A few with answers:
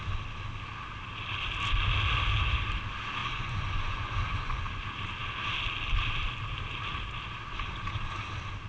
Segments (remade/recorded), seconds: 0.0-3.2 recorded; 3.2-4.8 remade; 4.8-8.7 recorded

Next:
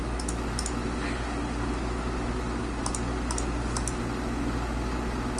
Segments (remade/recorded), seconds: 0.0-5.4 recorded

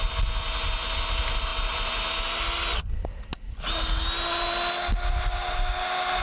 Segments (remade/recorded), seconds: 0.0-6.2 recorded

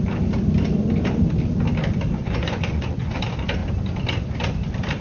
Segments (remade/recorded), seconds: 0.0-2.2 recorded; 2.2-3.2 remade; 3.2-5.0 recorded

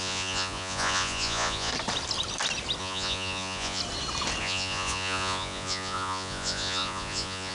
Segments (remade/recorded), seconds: 0.0-1.7 remade; 1.7-2.8 recorded; 2.8-3.8 remade; 3.8-4.4 recorded; 4.4-7.5 remade

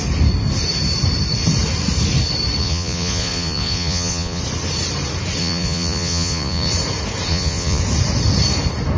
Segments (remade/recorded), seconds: 0.0-2.6 recorded; 2.6-4.4 remade; 4.4-5.4 recorded; 5.4-6.7 remade; 6.7-7.3 recorded; 7.3-7.8 remade; 7.8-9.0 recorded